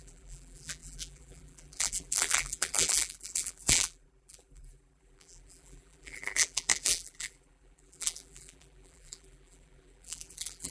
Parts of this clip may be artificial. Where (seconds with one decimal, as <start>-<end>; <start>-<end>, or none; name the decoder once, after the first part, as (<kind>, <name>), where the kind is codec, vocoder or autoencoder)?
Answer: 0.0-10.7 (vocoder, BigVGAN v2)